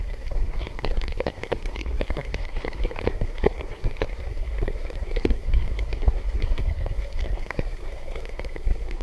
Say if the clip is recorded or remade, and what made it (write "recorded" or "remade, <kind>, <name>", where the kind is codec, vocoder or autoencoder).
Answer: remade, codec, SNAC